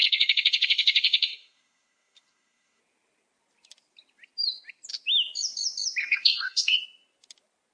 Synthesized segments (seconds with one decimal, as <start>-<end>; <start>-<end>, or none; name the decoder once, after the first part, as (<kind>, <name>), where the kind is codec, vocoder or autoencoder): 0.0-2.8 (codec, SNAC); 6.0-6.8